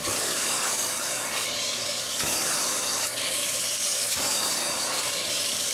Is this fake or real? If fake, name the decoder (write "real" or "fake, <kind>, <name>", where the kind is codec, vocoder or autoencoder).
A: fake, codec, DAC